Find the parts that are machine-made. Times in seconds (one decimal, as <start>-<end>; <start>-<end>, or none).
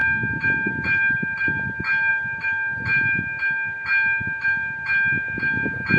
none